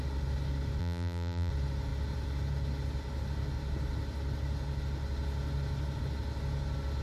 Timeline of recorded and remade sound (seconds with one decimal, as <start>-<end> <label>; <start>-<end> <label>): 0.0-0.8 recorded; 0.8-1.5 remade; 1.5-7.0 recorded